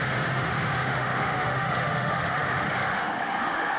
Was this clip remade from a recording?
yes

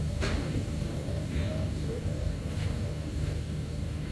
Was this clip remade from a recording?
yes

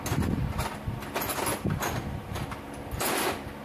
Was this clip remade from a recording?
no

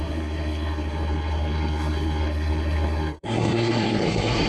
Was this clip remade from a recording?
yes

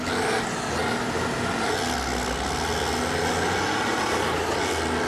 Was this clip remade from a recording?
no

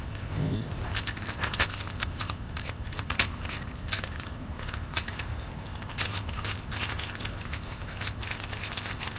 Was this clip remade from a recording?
yes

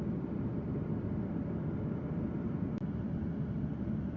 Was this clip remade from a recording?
no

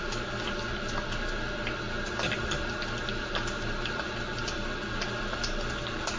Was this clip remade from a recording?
no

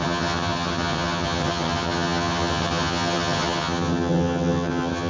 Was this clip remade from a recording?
yes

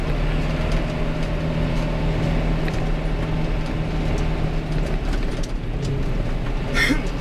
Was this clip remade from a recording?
no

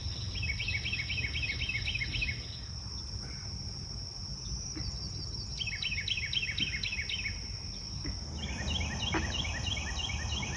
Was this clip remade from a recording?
no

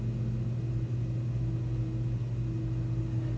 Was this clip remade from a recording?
no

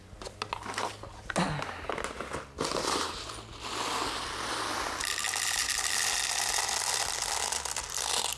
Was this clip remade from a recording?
no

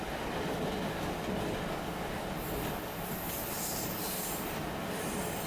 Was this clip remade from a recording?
no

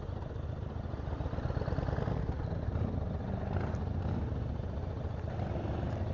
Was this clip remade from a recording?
no